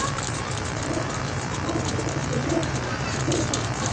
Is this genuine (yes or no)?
no